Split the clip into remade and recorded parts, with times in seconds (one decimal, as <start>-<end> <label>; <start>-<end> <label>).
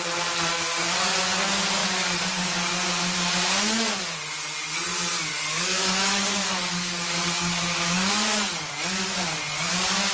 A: 0.0-1.8 recorded; 1.8-2.7 remade; 2.7-5.3 recorded; 5.3-8.7 remade; 8.7-10.1 recorded